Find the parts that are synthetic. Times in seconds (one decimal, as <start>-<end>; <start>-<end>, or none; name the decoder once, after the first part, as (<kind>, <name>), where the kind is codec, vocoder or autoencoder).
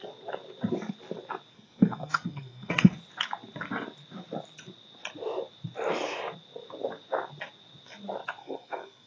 1.5-2.9 (codec, SNAC); 8.4-9.1